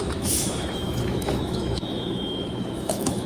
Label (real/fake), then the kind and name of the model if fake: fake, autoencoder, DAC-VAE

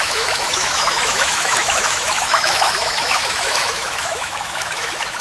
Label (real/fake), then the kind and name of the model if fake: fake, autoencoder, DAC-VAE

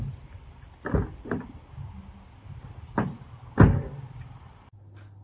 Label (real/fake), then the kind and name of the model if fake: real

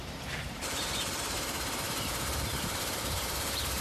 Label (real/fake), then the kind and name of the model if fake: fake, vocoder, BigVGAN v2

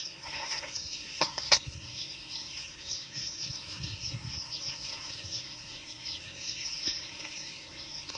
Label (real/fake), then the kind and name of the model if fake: fake, codec, SNAC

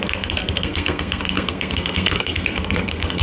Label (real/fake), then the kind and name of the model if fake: fake, codec, SNAC